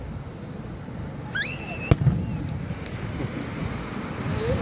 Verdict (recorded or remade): recorded